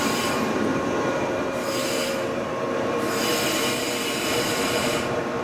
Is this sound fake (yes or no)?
yes